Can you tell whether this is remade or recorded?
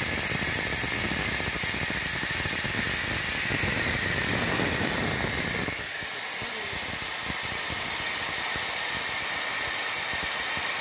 recorded